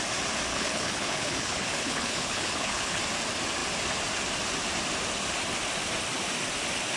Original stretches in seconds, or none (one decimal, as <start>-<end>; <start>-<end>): 0.0-0.5; 3.0-7.0